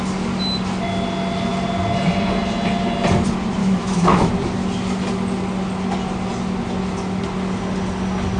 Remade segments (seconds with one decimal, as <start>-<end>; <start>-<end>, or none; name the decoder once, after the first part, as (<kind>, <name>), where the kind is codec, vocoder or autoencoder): 3.6-4.3 (autoencoder, DAC-VAE)